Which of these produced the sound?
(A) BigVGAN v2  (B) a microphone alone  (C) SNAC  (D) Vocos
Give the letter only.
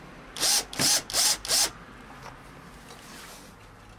B